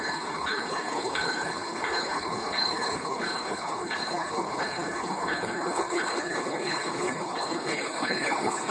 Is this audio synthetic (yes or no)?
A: yes